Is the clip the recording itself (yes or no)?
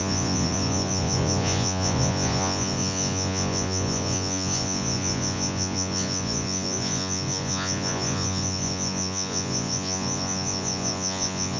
no